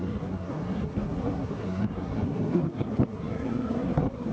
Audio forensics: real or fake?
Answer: fake